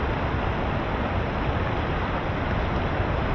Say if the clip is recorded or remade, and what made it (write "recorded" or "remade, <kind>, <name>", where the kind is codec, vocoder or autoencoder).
recorded